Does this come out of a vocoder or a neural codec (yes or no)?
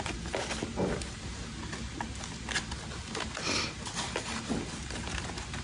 no